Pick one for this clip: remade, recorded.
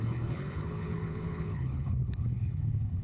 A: remade